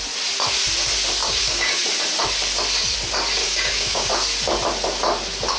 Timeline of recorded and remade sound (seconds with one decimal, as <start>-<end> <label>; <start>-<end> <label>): 0.0-1.2 recorded; 1.2-1.8 remade; 1.8-3.4 recorded; 3.4-4.1 remade; 4.1-5.6 recorded